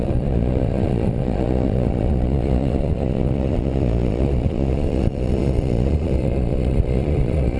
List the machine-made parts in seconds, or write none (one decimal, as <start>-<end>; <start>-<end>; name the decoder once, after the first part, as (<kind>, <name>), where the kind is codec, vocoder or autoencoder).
0.0-7.6 (vocoder, Vocos)